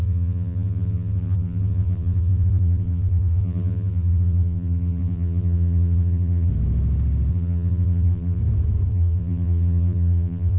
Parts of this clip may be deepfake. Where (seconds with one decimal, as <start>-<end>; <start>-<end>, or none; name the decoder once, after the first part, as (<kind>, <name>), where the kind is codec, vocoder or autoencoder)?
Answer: 0.0-6.5 (vocoder, BigVGAN v2); 7.3-8.4; 8.9-10.6